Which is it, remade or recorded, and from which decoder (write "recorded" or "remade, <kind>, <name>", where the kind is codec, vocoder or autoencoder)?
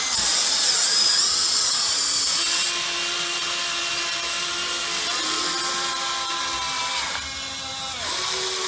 recorded